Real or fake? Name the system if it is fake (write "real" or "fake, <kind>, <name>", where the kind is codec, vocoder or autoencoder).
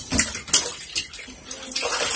real